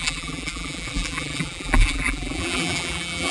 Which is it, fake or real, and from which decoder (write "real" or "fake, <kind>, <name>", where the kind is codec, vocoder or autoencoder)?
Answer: fake, vocoder, BigVGAN v2